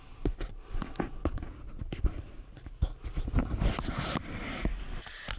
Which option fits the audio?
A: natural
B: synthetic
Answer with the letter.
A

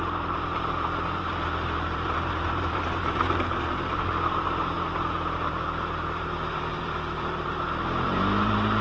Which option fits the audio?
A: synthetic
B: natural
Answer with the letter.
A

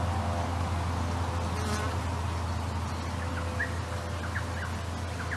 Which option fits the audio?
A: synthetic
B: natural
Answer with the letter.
B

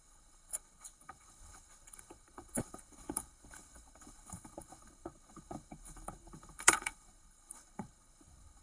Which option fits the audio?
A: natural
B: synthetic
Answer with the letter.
B